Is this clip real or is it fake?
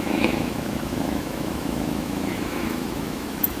fake